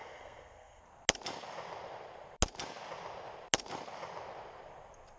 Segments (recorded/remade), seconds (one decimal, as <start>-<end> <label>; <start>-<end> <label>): 0.0-0.8 remade; 0.8-5.2 recorded